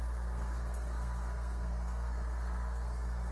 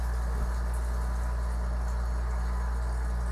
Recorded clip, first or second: second